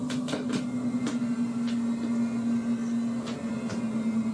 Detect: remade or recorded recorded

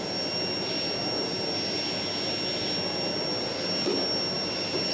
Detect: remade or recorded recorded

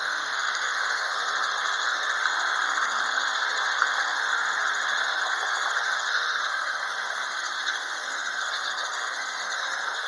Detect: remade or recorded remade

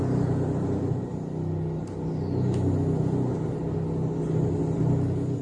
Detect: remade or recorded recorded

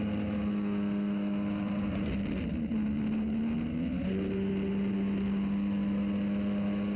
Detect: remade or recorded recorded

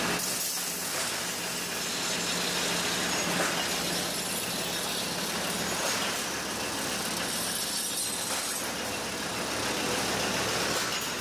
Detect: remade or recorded recorded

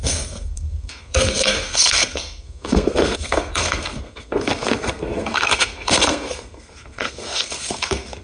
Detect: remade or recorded remade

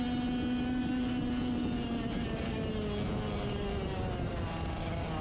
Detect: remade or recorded recorded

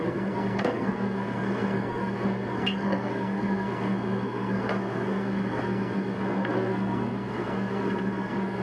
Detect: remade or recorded remade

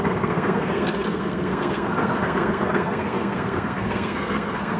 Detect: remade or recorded remade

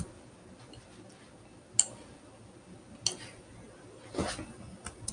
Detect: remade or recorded recorded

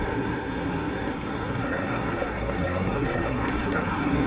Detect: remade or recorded remade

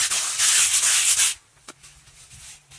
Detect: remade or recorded recorded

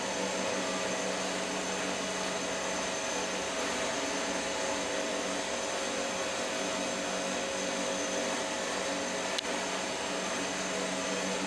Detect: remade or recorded recorded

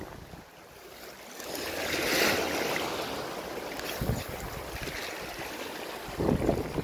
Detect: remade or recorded recorded